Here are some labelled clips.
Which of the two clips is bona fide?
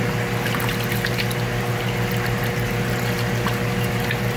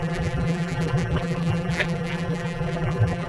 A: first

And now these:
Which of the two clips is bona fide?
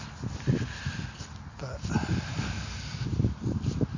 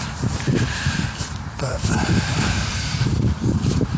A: first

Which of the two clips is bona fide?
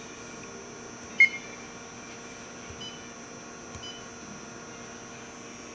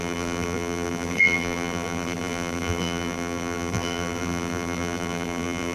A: first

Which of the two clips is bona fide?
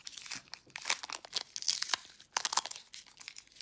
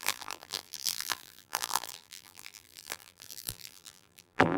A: first